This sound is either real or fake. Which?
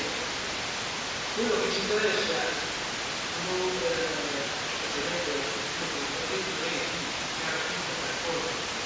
real